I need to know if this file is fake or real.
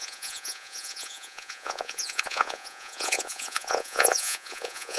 fake